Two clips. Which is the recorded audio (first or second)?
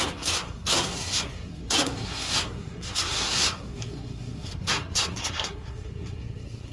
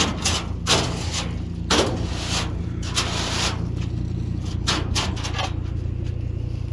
second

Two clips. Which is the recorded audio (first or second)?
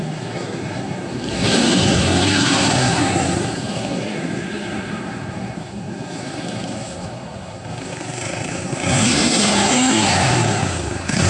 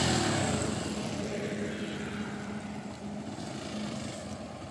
second